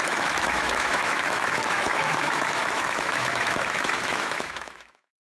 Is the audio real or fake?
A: fake